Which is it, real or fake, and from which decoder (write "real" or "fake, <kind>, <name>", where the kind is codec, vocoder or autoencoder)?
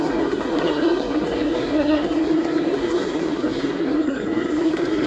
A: fake, codec, SNAC